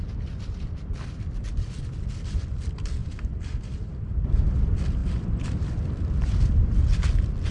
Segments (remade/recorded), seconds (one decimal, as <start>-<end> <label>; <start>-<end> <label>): 0.0-7.5 recorded